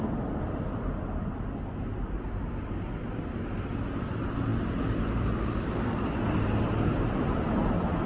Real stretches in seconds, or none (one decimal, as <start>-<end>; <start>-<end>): 0.0-8.1